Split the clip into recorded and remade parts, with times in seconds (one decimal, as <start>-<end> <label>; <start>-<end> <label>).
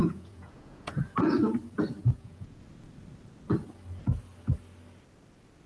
0.0-1.0 remade; 1.0-2.0 recorded; 2.0-2.6 remade; 2.6-5.7 recorded